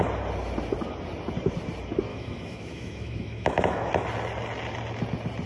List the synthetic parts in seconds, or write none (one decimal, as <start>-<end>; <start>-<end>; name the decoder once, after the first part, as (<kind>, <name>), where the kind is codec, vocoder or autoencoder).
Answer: 2.1-3.9 (autoencoder, DAC-VAE)